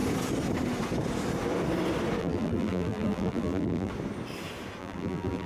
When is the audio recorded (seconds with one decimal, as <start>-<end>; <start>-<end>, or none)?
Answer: 0.0-2.2; 3.9-4.8